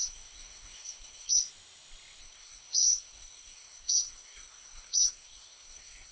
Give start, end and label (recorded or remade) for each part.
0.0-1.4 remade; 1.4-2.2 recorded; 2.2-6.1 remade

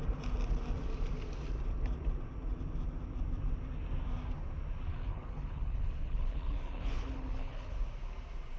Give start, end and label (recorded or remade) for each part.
0.0-4.9 recorded; 4.9-7.7 remade; 7.7-8.6 recorded

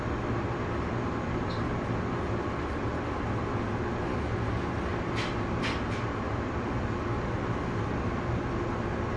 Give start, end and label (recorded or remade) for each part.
0.0-9.2 recorded

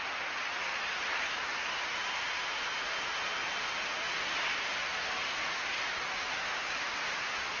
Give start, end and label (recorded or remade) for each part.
0.0-7.6 recorded